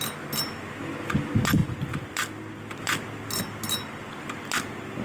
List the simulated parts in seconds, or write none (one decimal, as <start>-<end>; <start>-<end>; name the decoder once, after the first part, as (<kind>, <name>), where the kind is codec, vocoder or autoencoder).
1.6-2.8 (vocoder, BigVGAN v2)